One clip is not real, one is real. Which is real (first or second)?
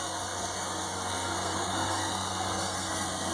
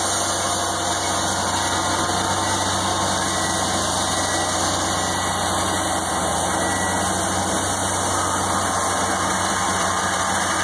second